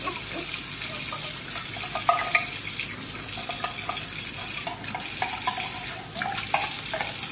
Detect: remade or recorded recorded